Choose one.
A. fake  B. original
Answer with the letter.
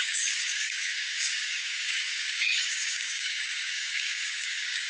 A